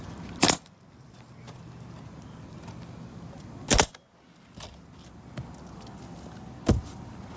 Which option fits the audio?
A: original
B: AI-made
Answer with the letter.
A